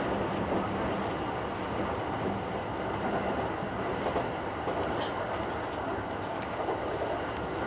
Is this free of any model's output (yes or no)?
yes